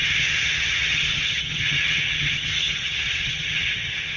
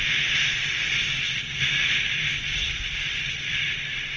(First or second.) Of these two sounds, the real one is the second